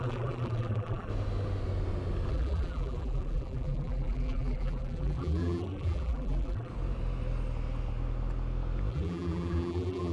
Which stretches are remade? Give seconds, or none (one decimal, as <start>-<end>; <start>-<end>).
0.0-1.1; 2.3-6.7; 8.9-10.1